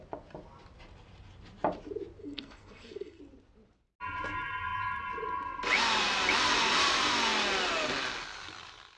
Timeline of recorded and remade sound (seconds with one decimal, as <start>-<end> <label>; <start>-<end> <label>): 0.0-2.2 recorded; 2.2-3.2 remade; 3.2-9.0 recorded